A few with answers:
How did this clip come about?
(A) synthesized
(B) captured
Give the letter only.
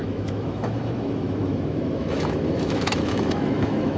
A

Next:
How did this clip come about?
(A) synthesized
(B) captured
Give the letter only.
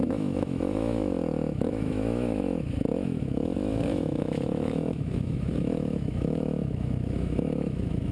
A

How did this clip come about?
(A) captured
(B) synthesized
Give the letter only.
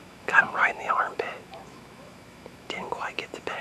B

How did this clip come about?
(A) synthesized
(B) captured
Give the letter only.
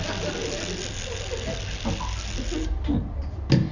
B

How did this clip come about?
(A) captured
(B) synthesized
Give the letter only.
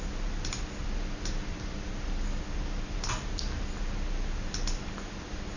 A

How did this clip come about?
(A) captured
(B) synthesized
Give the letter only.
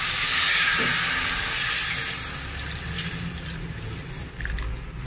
A